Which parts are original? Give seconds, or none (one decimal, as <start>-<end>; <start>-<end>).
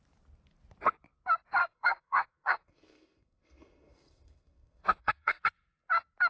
0.0-1.6; 5.4-6.3